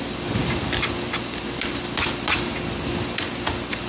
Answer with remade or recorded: recorded